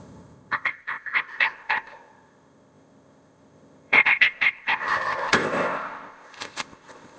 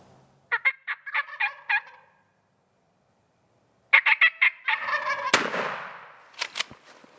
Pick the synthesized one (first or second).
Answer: first